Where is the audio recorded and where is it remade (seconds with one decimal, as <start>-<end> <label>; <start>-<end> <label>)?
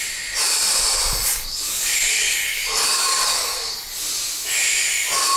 0.0-1.3 recorded; 1.3-3.9 remade; 3.9-5.4 recorded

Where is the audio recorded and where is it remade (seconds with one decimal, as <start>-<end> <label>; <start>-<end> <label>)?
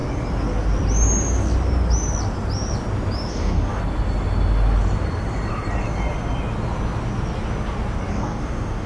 0.0-3.3 recorded; 3.3-3.8 remade; 3.8-8.1 recorded; 8.1-8.9 remade